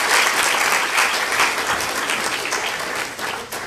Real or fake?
real